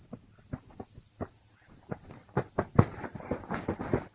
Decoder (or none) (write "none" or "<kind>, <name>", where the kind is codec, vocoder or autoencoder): vocoder, BigVGAN v2